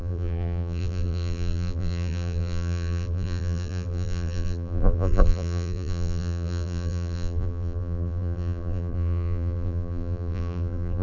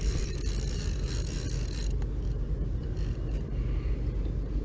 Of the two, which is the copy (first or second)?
first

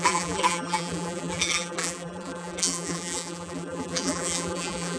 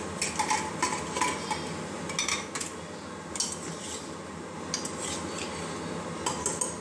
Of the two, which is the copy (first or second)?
first